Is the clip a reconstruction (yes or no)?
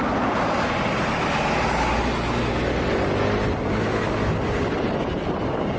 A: no